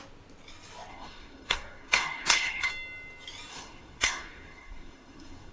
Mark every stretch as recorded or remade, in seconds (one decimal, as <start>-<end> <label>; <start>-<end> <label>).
0.0-0.9 recorded; 0.9-2.7 remade; 2.7-3.5 recorded; 3.5-5.5 remade